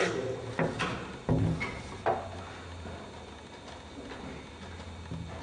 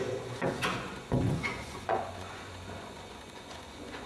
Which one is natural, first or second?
first